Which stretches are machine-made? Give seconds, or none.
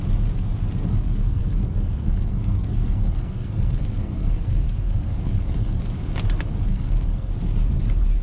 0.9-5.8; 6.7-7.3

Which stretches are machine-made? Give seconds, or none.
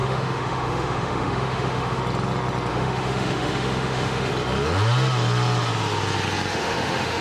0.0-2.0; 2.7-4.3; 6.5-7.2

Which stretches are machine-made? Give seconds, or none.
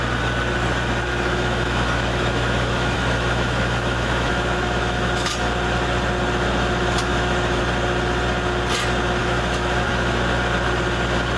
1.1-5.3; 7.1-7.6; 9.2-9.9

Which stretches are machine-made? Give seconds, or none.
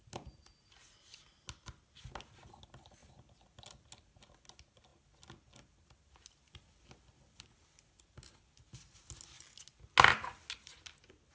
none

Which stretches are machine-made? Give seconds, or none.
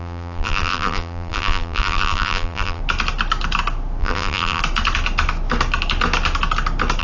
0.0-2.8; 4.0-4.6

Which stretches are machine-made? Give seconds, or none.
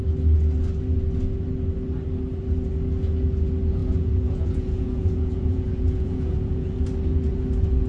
3.8-6.8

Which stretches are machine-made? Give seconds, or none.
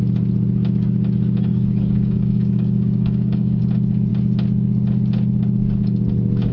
1.5-3.6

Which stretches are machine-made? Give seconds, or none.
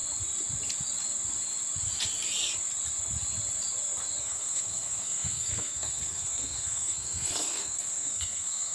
4.2-8.7